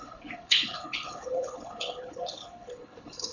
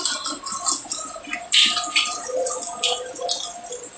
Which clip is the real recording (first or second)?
second